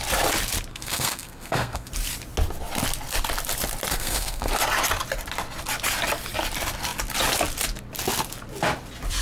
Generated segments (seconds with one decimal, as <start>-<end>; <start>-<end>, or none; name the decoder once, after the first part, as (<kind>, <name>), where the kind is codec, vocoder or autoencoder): 0.7-1.9 (codec, SNAC); 3.9-4.5